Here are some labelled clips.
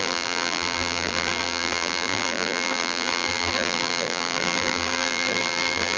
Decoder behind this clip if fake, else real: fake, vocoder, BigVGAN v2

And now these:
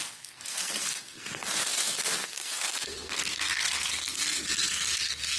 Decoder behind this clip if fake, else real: fake, codec, SNAC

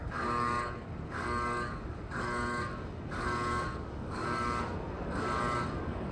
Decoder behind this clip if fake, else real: fake, codec, DAC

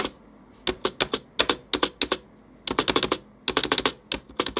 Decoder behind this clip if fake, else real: real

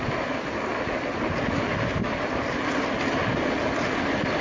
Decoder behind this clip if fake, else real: real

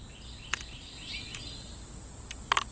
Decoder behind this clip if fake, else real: real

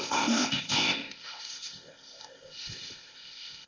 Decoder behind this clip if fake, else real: fake, codec, ZipCodec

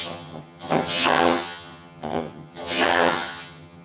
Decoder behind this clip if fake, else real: fake, vocoder, HiFi-GAN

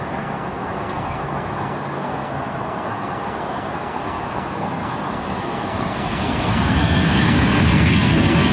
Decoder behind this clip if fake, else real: fake, codec, SNAC